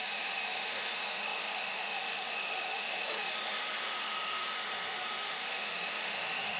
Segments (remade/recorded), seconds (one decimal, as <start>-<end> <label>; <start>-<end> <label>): 0.0-6.6 remade